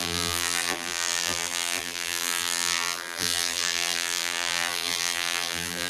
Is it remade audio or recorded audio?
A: remade